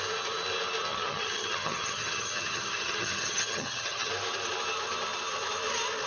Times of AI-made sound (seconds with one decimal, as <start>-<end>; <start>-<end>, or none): 0.9-4.1